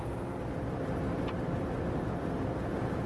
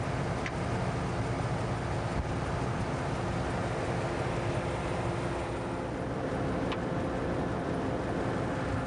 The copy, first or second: first